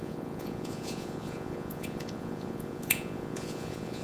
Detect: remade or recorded remade